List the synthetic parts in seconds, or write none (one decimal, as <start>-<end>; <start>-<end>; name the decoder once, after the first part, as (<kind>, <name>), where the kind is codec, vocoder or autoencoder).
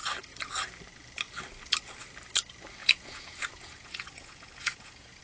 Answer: 2.8-5.2 (vocoder, Vocos)